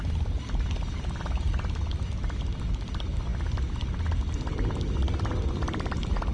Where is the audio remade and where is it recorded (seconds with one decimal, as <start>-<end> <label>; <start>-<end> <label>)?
0.0-6.3 recorded